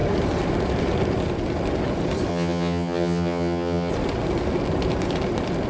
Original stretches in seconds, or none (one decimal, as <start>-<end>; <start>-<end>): 0.0-2.3; 3.9-5.7